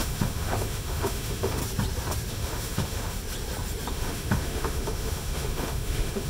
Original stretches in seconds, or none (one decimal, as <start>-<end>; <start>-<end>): 1.6-2.3; 3.2-3.9

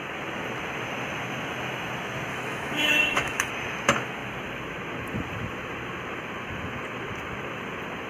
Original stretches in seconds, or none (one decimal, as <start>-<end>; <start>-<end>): 0.0-2.3; 3.5-8.1

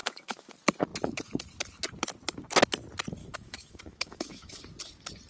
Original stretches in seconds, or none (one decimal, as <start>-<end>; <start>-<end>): 0.5-3.2; 4.6-5.3

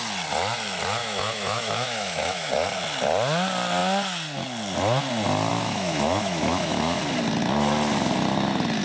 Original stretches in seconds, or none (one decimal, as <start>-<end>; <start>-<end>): 0.0-1.0; 2.5-5.5; 7.0-8.8

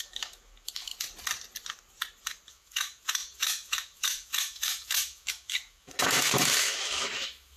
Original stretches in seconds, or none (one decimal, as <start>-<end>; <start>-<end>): 0.9-2.5

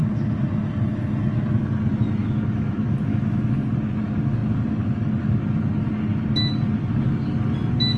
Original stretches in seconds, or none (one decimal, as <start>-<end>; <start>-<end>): 0.0-2.2; 3.4-8.0

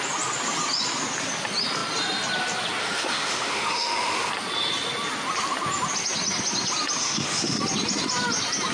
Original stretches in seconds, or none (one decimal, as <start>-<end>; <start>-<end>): 0.0-2.8; 4.3-7.0; 7.6-8.7

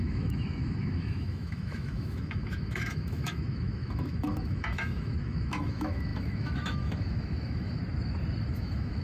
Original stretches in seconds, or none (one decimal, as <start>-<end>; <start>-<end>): 7.8-8.5